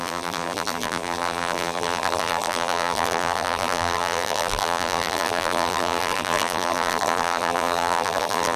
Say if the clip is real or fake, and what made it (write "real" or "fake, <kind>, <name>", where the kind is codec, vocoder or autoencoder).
fake, vocoder, BigVGAN v2